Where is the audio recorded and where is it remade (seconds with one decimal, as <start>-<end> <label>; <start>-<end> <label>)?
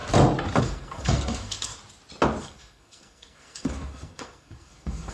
0.0-0.6 recorded; 0.6-1.7 remade; 1.7-2.4 recorded; 2.4-5.1 remade